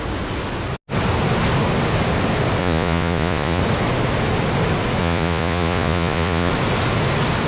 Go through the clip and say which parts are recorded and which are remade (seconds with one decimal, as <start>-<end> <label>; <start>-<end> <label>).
0.0-2.6 recorded; 2.6-3.6 remade; 3.6-5.0 recorded; 5.0-6.5 remade; 6.5-7.5 recorded